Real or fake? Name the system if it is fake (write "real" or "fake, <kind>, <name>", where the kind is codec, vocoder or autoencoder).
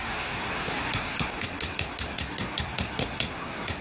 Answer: fake, codec, SNAC